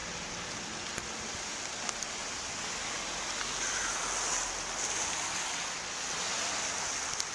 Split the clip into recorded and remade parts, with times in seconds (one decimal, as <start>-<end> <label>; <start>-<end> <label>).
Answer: 0.0-7.3 recorded